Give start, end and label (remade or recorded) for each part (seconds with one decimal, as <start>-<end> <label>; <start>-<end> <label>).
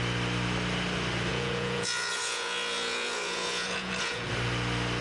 0.0-1.3 recorded; 1.3-4.3 remade; 4.3-5.0 recorded